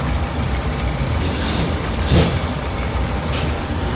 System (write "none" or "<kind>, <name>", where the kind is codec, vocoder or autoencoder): none